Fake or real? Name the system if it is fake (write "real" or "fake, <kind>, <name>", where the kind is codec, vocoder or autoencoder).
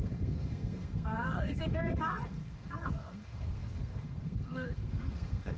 fake, codec, SNAC